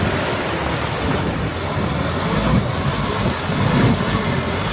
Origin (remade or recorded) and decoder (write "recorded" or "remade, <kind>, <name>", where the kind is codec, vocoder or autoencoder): recorded